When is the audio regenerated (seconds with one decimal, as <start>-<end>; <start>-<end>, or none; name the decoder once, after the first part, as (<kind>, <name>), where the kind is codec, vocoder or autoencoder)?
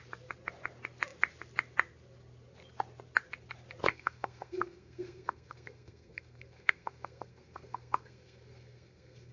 3.9-9.3 (codec, SNAC)